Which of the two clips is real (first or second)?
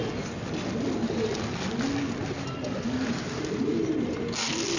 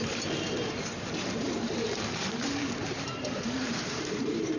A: first